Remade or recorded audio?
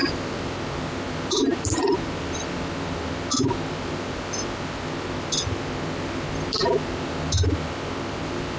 recorded